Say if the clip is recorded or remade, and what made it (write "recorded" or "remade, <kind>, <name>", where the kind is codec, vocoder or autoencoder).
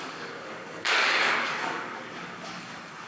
remade, codec, DAC